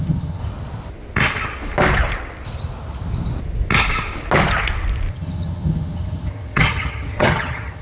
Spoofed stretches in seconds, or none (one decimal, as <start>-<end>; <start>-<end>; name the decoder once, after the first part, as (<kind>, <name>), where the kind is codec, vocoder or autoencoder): 0.0-0.4 (vocoder, HiFi-GAN); 5.1-7.8